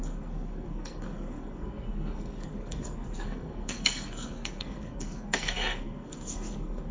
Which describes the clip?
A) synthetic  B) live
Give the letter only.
A